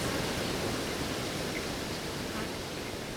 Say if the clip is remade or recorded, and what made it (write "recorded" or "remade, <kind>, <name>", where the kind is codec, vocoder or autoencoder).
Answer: recorded